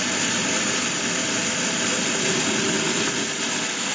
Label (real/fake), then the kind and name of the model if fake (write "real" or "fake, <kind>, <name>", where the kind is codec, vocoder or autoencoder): real